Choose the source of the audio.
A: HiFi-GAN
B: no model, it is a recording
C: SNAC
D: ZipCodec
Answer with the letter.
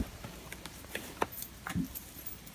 B